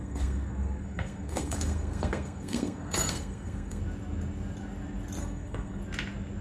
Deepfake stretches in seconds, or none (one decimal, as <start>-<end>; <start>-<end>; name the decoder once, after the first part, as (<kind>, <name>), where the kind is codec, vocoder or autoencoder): 0.0-3.8 (codec, SNAC); 5.2-5.8